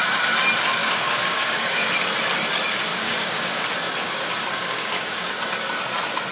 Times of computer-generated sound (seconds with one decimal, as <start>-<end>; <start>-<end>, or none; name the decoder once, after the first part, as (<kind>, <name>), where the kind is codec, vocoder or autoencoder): 0.8-1.9 (codec, DAC); 2.9-3.6; 4.5-5.4